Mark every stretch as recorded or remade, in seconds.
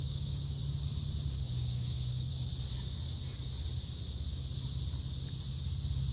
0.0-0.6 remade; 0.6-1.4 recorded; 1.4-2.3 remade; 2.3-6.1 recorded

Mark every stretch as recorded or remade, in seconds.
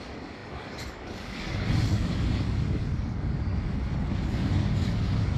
0.0-5.4 remade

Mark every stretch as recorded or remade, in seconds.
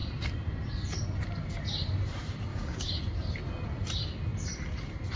0.0-2.5 recorded; 2.5-3.0 remade; 3.0-5.2 recorded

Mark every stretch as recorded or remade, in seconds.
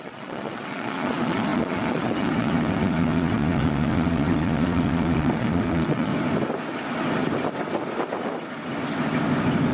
0.0-6.1 remade; 6.1-9.7 recorded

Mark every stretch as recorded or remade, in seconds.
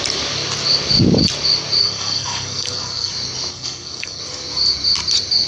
0.0-1.8 recorded; 1.8-3.1 remade; 3.1-3.5 recorded; 3.5-4.2 remade; 4.2-5.5 recorded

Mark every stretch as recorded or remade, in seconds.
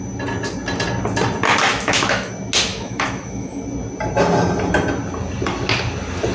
0.0-1.7 recorded; 1.7-2.3 remade; 2.3-2.7 recorded; 2.7-3.6 remade; 3.6-6.3 recorded